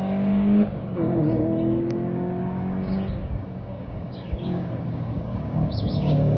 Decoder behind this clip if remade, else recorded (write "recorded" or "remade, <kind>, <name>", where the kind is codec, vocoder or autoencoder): remade, codec, DAC